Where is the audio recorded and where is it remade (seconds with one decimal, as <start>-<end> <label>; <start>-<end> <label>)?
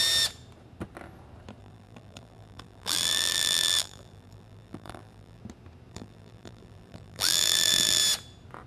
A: 0.0-1.6 recorded; 1.6-5.4 remade; 5.4-5.9 recorded; 5.9-8.0 remade; 8.0-8.7 recorded